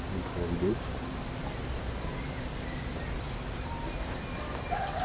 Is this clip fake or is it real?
real